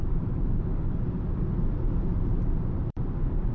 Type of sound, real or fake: real